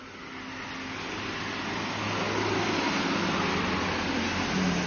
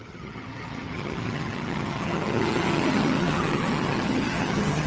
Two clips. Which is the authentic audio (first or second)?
first